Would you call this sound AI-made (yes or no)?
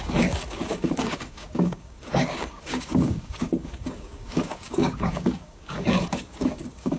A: yes